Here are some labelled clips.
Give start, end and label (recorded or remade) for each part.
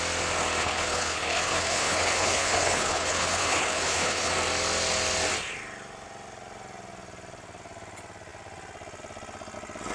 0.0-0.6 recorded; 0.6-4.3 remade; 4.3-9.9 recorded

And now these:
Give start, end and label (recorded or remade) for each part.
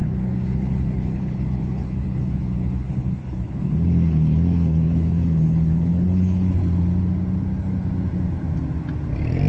0.0-6.6 remade; 6.6-9.5 recorded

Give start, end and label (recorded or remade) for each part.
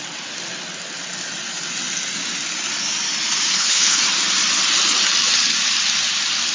0.0-3.5 recorded; 3.5-4.0 remade; 4.0-6.5 recorded